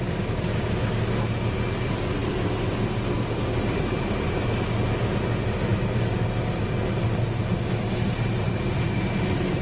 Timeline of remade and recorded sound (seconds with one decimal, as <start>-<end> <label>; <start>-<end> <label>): 0.0-9.6 recorded